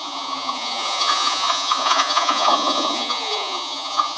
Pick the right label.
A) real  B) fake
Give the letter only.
B